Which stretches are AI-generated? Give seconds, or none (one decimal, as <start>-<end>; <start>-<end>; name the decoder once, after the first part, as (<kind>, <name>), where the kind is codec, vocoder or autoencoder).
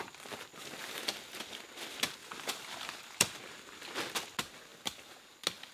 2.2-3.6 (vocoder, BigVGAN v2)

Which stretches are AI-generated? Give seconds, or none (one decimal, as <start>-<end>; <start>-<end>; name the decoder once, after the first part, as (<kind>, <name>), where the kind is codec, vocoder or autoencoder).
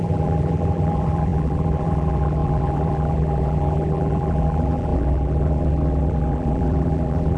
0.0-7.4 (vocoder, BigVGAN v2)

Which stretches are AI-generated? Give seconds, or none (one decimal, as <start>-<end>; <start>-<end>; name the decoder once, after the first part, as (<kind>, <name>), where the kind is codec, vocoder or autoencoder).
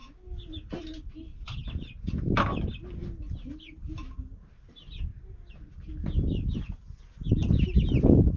none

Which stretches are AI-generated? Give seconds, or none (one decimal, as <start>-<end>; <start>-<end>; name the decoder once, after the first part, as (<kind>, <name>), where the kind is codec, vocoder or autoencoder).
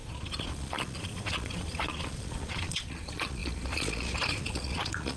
0.0-5.2 (vocoder, Vocos)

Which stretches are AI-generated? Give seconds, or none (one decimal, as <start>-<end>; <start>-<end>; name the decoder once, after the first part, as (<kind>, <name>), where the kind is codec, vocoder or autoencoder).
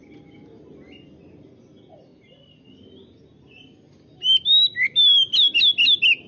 none